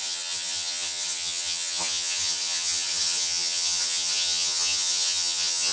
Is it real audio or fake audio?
fake